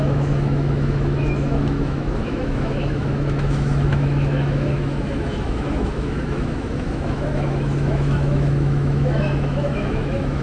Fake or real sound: fake